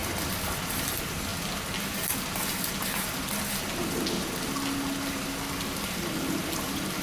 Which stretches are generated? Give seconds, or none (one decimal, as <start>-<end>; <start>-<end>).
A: 0.9-1.3; 5.5-7.0